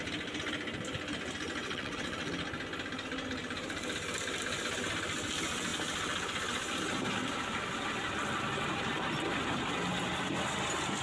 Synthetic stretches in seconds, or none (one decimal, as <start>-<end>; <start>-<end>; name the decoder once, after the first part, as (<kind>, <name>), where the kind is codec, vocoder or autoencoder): 1.6-2.3 (vocoder, WaveNeXt)